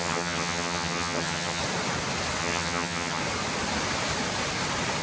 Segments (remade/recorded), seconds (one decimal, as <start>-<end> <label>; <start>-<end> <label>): 0.0-1.6 remade; 1.6-2.4 recorded; 2.4-3.2 remade; 3.2-5.0 recorded